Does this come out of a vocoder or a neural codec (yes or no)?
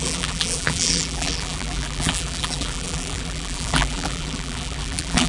yes